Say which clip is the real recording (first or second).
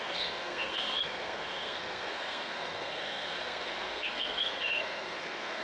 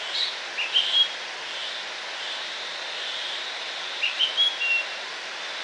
second